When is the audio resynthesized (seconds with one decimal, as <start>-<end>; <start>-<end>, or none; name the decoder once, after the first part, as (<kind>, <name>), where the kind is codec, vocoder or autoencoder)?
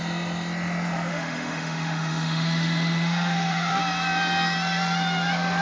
1.1-3.8 (autoencoder, DAC-VAE)